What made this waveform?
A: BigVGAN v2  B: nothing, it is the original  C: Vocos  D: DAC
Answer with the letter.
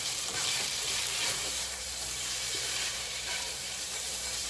A